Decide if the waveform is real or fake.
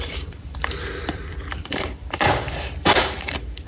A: fake